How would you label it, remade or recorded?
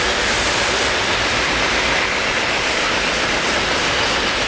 recorded